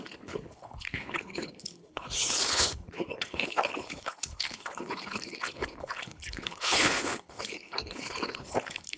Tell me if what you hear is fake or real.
fake